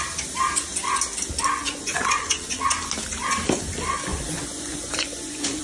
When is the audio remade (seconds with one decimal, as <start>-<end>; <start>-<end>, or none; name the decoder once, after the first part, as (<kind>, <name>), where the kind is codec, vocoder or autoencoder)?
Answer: 1.6-2.6 (vocoder, Vocos); 4.1-5.6